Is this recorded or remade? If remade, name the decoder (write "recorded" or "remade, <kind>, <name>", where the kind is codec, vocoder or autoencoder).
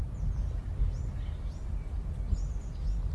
recorded